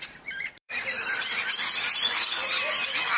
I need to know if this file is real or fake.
fake